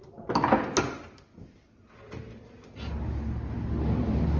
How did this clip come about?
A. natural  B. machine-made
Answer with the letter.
A